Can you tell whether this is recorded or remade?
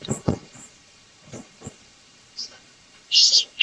remade